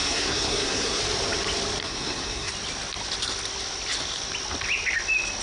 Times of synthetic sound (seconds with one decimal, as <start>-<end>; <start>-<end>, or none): 0.0-1.0; 1.8-2.5